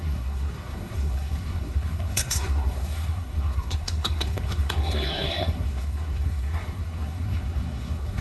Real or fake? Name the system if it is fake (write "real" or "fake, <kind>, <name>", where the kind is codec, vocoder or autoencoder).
fake, codec, SNAC